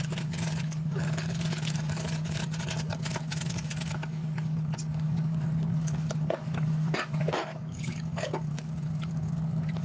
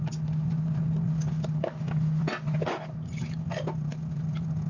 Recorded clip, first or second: second